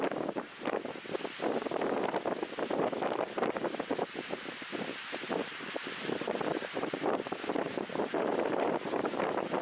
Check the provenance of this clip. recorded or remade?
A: remade